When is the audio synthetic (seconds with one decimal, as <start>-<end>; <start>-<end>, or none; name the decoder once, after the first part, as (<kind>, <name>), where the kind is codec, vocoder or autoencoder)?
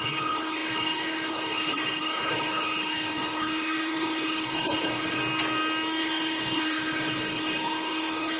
0.0-5.2 (codec, HILCodec); 6.0-8.4